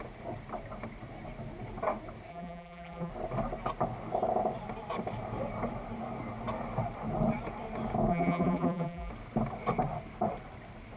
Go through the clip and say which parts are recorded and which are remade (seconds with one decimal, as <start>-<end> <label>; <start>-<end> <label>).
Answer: 0.0-2.3 recorded; 2.3-3.1 remade; 3.1-8.1 recorded; 8.1-9.1 remade; 9.1-11.0 recorded